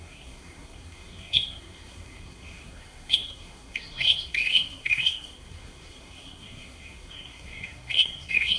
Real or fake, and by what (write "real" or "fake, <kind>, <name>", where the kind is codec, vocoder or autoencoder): fake, codec, SNAC